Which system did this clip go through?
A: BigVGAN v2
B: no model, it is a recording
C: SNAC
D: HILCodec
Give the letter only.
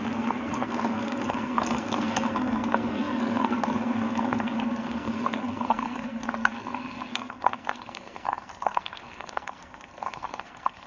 C